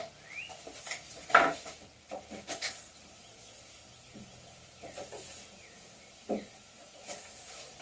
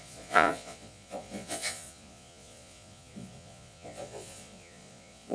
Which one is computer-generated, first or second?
second